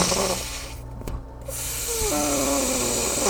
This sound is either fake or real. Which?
real